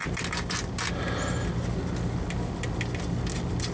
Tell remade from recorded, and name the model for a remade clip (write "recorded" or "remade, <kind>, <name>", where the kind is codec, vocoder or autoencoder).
recorded